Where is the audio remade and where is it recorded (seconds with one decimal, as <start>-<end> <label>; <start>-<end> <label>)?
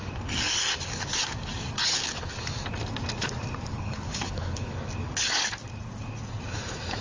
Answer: 0.0-3.7 recorded; 3.7-4.7 remade; 4.7-7.0 recorded